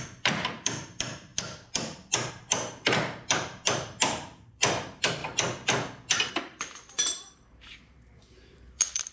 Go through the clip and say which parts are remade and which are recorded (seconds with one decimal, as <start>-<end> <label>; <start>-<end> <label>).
0.0-1.3 remade; 1.3-2.3 recorded; 2.3-5.2 remade; 5.2-6.3 recorded; 6.3-9.1 remade